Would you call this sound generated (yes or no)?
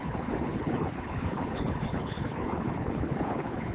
yes